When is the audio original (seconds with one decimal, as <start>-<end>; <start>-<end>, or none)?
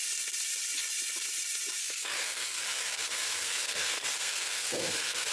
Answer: 0.0-1.8